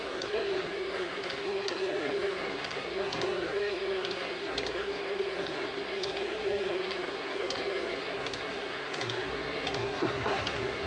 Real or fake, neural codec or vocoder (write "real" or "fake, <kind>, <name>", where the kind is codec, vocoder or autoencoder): fake, codec, SNAC